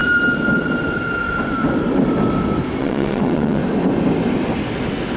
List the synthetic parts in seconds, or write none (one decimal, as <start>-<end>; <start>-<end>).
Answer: 2.8-3.6